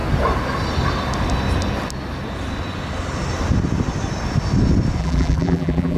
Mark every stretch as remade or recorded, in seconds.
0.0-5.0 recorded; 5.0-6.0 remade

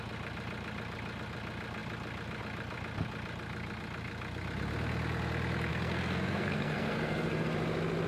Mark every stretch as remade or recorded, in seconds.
0.0-5.7 recorded; 5.7-7.5 remade; 7.5-8.1 recorded

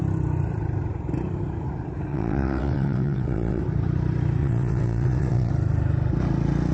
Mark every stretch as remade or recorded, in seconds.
0.0-2.1 recorded; 2.1-3.6 remade; 3.6-4.4 recorded; 4.4-5.5 remade; 5.5-6.7 recorded